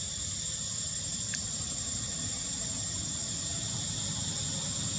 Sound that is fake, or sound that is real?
real